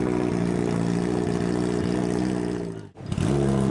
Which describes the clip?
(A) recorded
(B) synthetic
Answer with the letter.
A